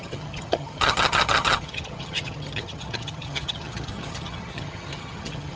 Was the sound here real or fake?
fake